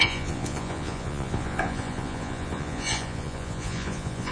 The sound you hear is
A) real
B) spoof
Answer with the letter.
B